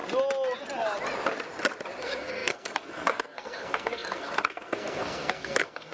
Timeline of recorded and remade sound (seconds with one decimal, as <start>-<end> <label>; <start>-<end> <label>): 0.0-2.0 recorded; 2.0-5.9 remade